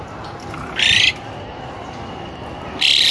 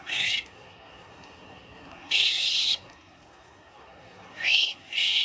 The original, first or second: first